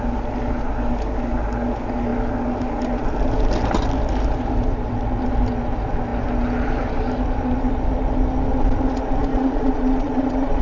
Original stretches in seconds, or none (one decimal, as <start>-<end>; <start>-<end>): 0.0-9.3